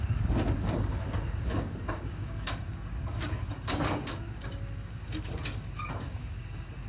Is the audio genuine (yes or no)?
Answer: no